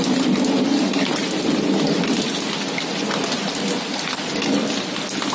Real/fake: real